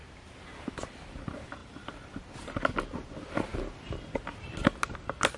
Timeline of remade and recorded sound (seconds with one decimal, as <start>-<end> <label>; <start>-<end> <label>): 0.0-0.5 remade; 0.5-5.4 recorded